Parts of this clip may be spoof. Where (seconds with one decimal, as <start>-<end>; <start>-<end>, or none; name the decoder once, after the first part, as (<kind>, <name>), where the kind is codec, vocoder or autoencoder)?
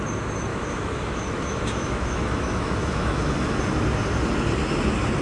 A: 0.5-3.6 (autoencoder, DAC-VAE)